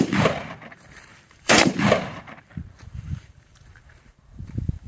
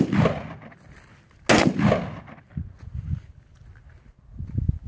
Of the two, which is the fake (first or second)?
first